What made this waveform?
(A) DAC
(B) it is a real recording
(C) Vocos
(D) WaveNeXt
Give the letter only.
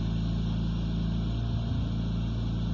B